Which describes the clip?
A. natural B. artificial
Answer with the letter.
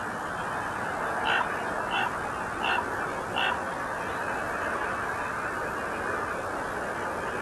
A